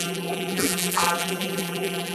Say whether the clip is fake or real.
fake